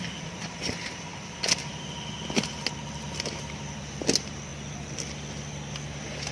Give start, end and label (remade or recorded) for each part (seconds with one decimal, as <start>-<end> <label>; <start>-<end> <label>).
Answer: 0.0-6.3 recorded